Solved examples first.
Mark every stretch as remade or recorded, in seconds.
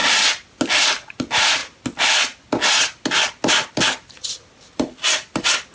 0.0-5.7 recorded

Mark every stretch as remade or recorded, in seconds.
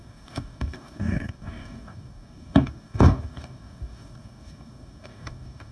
0.0-5.7 remade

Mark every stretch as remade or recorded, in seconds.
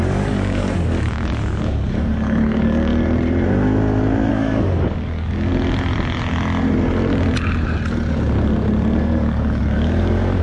0.0-2.9 remade; 2.9-4.3 recorded; 4.3-5.5 remade; 5.5-9.0 recorded; 9.0-10.4 remade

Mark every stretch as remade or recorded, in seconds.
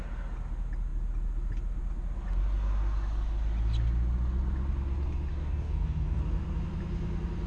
0.0-5.3 recorded; 5.3-6.2 remade; 6.2-7.5 recorded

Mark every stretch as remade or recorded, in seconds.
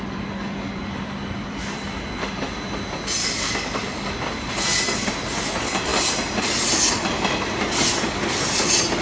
0.0-3.2 recorded; 3.2-4.1 remade; 4.1-9.0 recorded